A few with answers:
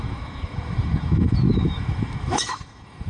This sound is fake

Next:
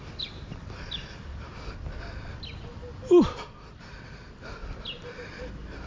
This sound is real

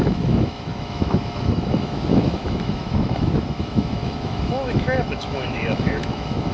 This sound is fake